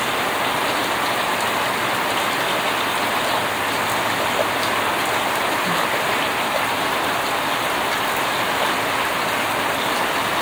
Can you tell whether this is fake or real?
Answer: real